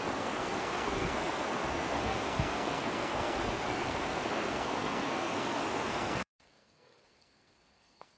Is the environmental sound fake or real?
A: fake